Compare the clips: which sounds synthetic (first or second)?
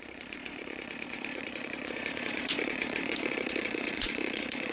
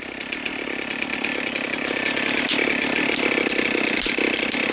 first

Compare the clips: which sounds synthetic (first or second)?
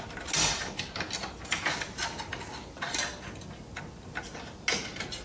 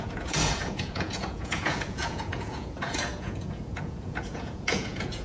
second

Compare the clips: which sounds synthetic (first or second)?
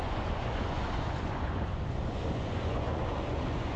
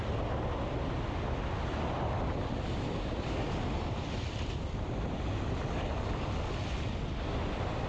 first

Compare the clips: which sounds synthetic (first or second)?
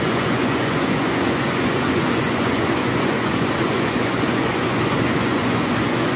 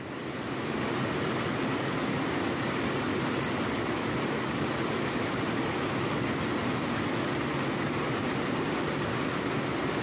first